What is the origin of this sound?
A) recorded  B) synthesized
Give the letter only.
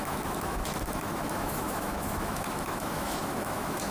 B